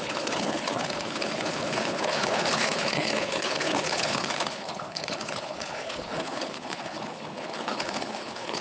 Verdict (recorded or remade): remade